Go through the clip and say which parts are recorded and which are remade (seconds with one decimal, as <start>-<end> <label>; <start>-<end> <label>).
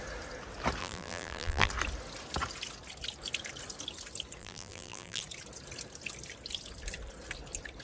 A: 0.0-0.8 recorded; 0.8-1.7 remade; 1.7-4.4 recorded; 4.4-5.2 remade; 5.2-7.8 recorded